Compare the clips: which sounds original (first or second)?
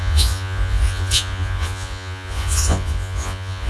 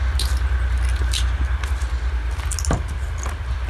second